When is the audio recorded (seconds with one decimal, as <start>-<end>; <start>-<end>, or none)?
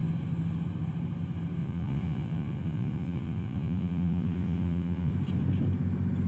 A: 0.0-1.6; 5.1-6.3